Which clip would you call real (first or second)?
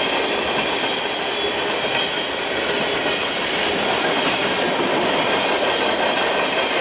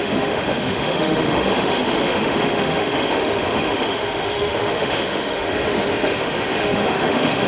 first